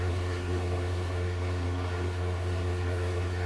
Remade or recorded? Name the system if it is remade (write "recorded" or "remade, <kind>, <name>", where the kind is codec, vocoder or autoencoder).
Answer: remade, codec, SNAC